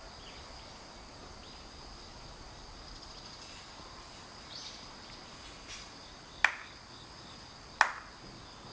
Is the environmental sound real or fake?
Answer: real